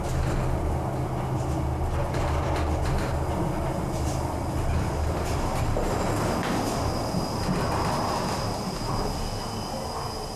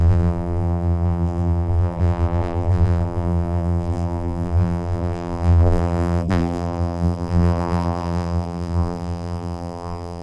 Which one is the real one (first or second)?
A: first